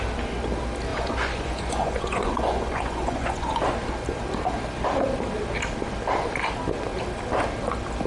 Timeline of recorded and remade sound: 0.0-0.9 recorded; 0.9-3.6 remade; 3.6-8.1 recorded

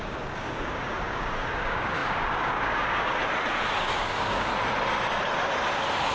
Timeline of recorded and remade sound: 0.0-3.2 remade; 3.2-3.8 recorded; 3.8-4.5 remade; 4.5-6.1 recorded

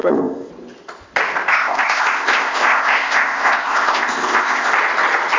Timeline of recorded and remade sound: 0.0-0.5 remade; 0.5-1.5 recorded; 1.5-4.7 remade; 4.7-5.4 recorded

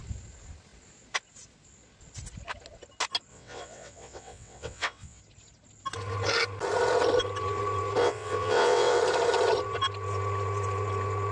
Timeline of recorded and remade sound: 0.0-3.3 recorded; 3.3-5.2 remade; 5.2-8.0 recorded; 8.0-9.0 remade; 9.0-11.3 recorded

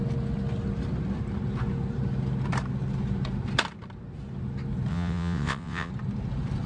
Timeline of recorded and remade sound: 0.0-4.9 recorded; 4.9-5.9 remade; 5.9-6.7 recorded

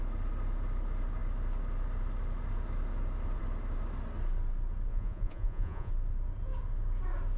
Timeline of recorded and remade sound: 0.0-4.9 recorded; 4.9-5.9 remade; 5.9-7.4 recorded

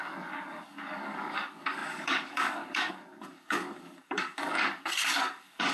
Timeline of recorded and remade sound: 0.0-5.7 remade

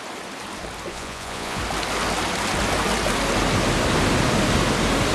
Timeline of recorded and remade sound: 0.0-0.9 recorded; 0.9-1.6 remade; 1.6-5.1 recorded